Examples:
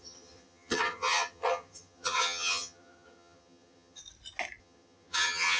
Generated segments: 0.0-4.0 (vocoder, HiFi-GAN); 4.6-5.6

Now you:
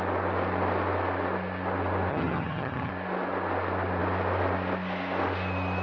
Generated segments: 2.1-2.9 (vocoder, HiFi-GAN)